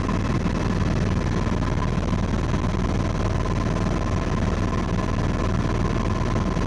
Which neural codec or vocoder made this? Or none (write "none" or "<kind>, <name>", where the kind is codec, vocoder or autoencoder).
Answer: none